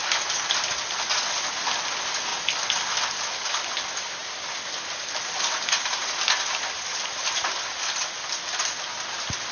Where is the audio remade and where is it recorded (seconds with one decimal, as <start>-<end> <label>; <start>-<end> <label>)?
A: 0.0-9.5 recorded